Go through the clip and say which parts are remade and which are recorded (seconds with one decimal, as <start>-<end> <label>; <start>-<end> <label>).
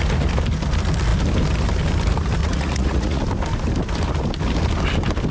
0.0-2.4 recorded; 2.4-3.2 remade; 3.2-5.3 recorded